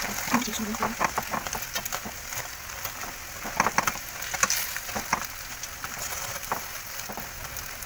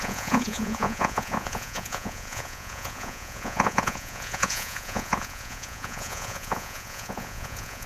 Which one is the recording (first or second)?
first